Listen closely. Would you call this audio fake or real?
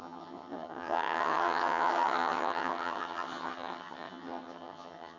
fake